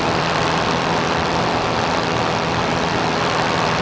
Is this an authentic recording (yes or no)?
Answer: no